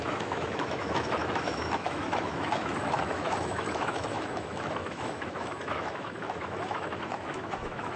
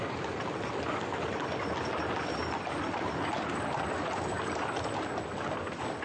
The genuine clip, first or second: second